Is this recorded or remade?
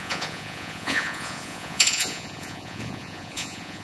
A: remade